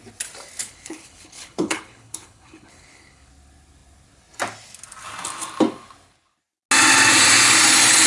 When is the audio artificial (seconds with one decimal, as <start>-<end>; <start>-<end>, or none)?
0.6-3.3